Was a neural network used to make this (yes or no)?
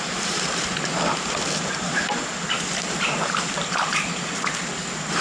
yes